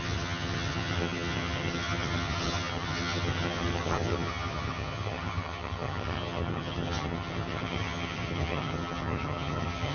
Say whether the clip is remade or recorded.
remade